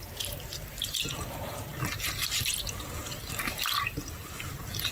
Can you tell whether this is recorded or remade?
recorded